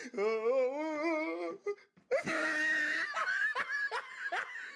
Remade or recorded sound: recorded